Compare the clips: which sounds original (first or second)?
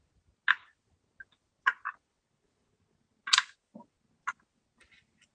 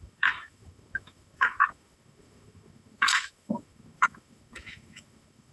first